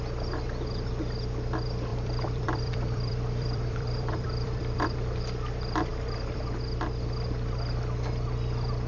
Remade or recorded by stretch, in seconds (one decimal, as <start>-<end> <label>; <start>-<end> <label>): 0.0-1.9 recorded; 1.9-5.2 remade; 5.2-5.9 recorded; 5.9-6.4 remade; 6.4-8.9 recorded